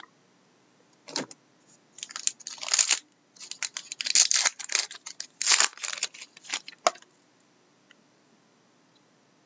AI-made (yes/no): no